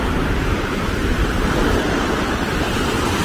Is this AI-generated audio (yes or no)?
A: no